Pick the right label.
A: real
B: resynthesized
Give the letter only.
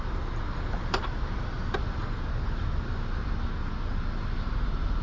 A